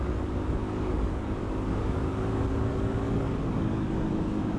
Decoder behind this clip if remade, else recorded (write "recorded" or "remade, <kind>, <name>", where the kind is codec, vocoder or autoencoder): remade, codec, DAC